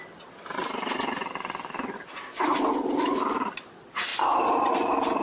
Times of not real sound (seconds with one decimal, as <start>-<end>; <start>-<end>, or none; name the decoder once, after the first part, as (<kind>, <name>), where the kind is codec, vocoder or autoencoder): none